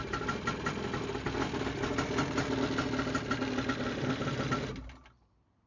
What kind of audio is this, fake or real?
real